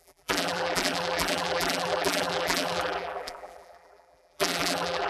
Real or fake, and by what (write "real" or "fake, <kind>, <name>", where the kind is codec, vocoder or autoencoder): fake, vocoder, BigVGAN v2